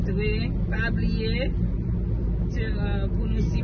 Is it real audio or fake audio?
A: real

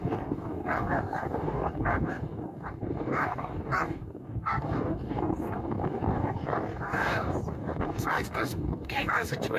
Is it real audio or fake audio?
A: fake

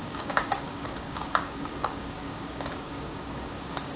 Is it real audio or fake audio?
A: fake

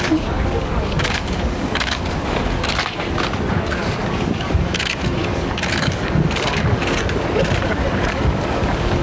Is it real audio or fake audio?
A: fake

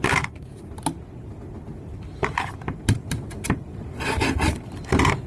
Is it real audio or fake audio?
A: real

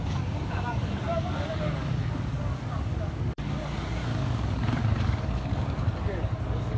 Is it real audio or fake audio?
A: fake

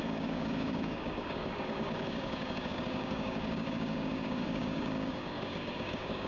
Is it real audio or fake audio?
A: fake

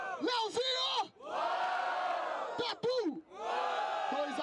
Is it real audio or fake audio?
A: real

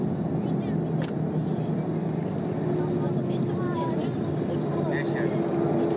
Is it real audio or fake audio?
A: real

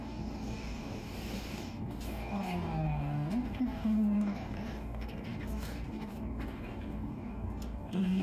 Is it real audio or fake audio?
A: fake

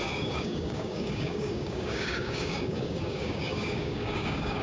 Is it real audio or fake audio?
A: fake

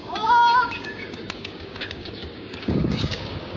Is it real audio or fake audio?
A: fake